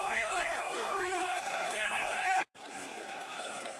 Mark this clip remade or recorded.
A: remade